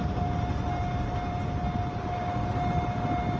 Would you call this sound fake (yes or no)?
no